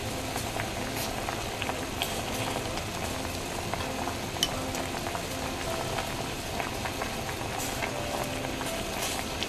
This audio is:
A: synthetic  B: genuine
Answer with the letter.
B